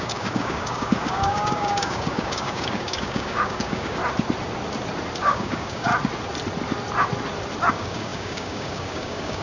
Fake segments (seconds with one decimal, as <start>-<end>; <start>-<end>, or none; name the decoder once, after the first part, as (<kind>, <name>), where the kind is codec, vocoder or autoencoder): 0.0-4.0 (codec, DAC); 5.2-5.9; 7.7-9.4

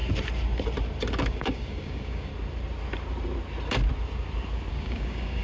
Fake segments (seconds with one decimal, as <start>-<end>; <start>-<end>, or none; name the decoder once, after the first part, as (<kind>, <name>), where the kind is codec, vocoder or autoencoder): 1.2-2.3 (codec, DAC); 4.7-5.4

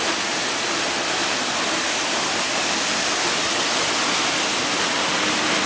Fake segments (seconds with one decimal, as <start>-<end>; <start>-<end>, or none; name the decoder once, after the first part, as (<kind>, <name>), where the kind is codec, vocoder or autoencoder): none

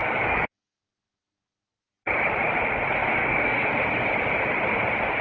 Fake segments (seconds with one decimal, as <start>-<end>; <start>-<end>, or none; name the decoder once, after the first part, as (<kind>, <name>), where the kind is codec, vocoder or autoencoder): 0.0-1.9 (codec, DAC); 3.2-3.7

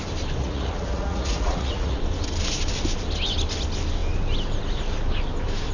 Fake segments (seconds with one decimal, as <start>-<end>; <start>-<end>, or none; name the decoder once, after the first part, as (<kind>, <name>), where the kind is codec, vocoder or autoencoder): 0.4-2.0 (vocoder, Vocos)

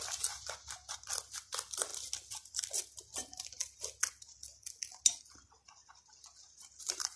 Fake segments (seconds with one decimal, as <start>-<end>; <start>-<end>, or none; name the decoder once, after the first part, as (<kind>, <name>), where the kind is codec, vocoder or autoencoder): none

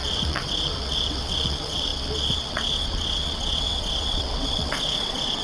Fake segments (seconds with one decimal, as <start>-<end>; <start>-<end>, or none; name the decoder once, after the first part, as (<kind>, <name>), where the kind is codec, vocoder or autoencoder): 0.0-5.4 (vocoder, WaveNeXt)